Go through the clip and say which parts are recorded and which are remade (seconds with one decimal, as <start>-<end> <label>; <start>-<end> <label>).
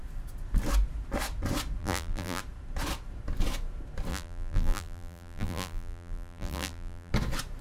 0.0-1.8 recorded; 1.8-2.4 remade; 2.4-4.1 recorded; 4.1-7.1 remade; 7.1-7.6 recorded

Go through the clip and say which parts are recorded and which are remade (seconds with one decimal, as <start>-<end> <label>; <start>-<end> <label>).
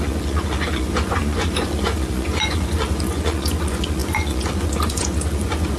0.0-5.8 remade